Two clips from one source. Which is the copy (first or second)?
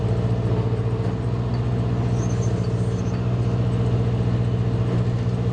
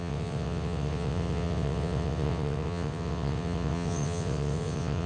second